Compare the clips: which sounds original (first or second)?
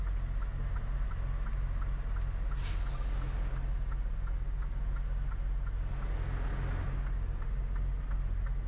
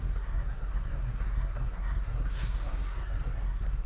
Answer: first